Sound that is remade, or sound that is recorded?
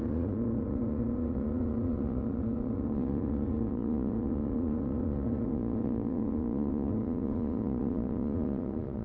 remade